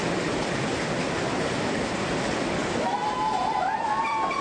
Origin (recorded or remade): remade